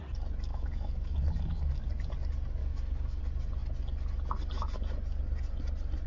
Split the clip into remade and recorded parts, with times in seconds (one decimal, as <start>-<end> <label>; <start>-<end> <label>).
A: 0.0-0.5 recorded; 0.5-1.8 remade; 1.8-2.6 recorded; 2.6-3.2 remade; 3.2-6.1 recorded